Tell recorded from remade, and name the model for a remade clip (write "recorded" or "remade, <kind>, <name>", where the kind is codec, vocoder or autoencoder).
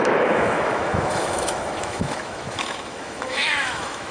remade, autoencoder, DAC-VAE